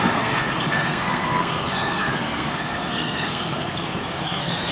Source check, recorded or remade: remade